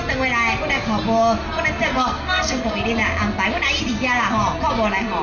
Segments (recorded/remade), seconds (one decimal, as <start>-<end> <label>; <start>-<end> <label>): 0.0-1.9 recorded; 1.9-2.7 remade; 2.7-5.2 recorded